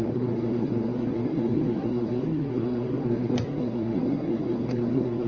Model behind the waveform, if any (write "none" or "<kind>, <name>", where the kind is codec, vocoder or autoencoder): codec, SNAC